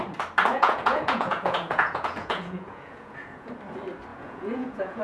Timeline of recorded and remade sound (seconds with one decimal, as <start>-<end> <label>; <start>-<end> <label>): 0.0-0.5 recorded; 0.5-3.5 remade; 3.5-4.1 recorded; 4.1-5.0 remade